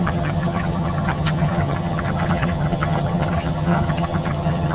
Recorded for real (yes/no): no